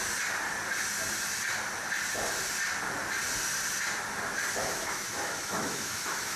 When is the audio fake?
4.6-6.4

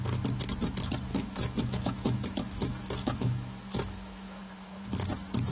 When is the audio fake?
1.1-4.4

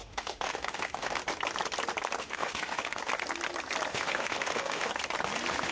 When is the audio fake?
0.0-1.2; 2.2-3.0; 3.9-4.9

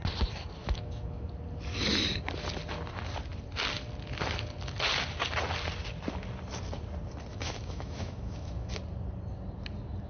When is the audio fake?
0.6-1.3; 7.3-8.7